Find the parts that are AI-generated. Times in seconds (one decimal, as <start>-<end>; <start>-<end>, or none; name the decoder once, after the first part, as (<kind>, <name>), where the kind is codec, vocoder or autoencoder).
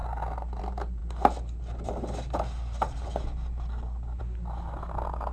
none